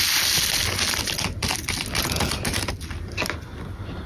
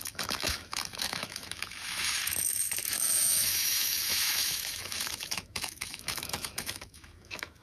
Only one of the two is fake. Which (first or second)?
second